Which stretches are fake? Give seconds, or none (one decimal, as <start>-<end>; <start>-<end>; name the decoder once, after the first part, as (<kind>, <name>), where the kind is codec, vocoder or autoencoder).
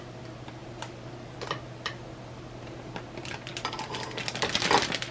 none